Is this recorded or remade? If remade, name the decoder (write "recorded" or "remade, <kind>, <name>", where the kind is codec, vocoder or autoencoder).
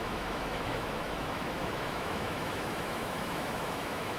remade, autoencoder, DAC-VAE